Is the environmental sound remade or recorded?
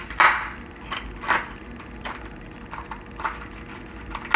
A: recorded